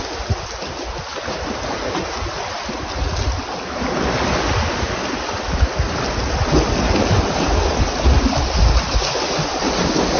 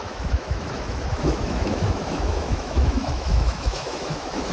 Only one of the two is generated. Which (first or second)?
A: second